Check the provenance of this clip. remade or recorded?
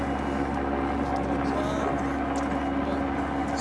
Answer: recorded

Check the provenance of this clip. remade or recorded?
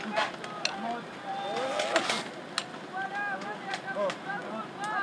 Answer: recorded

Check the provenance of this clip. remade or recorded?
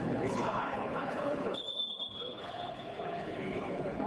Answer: remade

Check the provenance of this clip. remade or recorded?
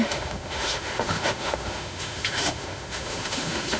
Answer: remade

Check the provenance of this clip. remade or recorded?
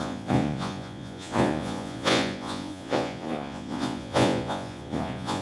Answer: remade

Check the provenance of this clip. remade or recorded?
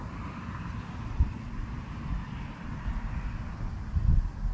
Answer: recorded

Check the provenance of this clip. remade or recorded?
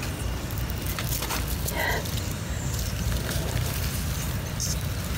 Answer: remade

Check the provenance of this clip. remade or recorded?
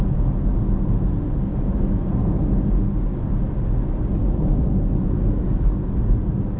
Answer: recorded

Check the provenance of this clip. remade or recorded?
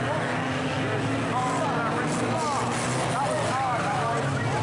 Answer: recorded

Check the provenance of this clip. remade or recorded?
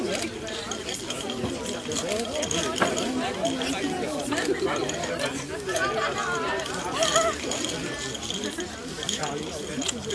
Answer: recorded